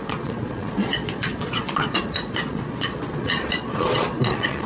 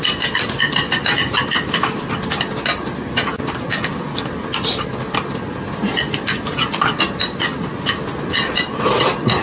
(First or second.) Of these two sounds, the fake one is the first